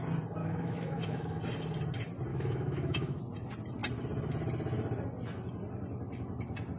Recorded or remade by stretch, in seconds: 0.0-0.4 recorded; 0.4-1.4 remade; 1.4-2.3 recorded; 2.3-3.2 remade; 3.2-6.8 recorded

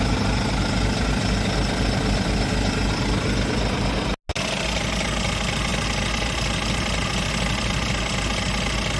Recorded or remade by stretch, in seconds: 0.0-9.0 recorded

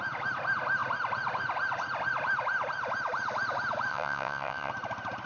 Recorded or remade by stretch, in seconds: 0.0-3.9 recorded; 3.9-4.7 remade; 4.7-5.3 recorded

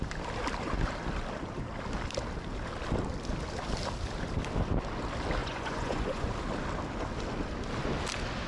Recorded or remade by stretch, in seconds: 0.0-5.4 recorded; 5.4-6.3 remade; 6.3-8.5 recorded

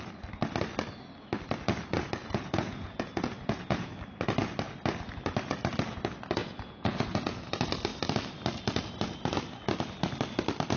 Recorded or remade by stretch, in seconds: 0.0-2.2 recorded; 2.2-3.9 remade; 3.9-6.4 recorded; 6.4-7.5 remade; 7.5-10.8 recorded

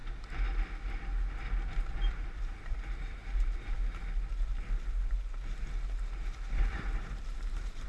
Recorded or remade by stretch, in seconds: 0.0-1.9 recorded; 1.9-3.2 remade; 3.2-6.7 recorded; 6.7-7.9 remade